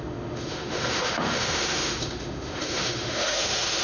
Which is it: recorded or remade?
remade